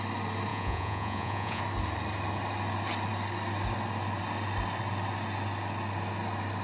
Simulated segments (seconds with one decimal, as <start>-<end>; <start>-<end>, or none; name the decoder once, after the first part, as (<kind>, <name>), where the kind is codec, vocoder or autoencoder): 0.5-1.6 (vocoder, Vocos)